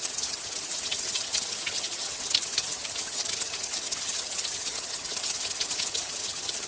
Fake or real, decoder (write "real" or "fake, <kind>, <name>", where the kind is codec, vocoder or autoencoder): fake, vocoder, HiFi-GAN